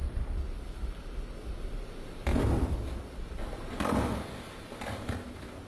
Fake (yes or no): no